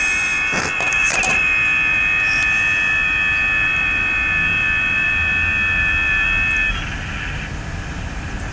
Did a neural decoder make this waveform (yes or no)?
no